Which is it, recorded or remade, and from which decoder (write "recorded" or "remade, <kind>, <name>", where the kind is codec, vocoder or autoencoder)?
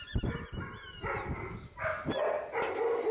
recorded